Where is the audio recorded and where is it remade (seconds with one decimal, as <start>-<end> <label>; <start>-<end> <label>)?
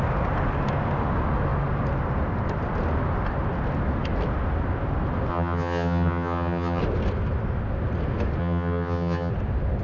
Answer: 0.0-5.3 recorded; 5.3-6.8 remade; 6.8-8.4 recorded; 8.4-9.3 remade; 9.3-9.8 recorded